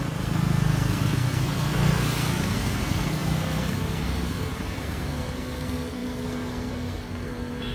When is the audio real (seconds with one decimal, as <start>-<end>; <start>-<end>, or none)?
none